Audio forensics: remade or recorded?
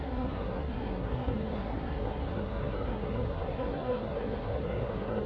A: remade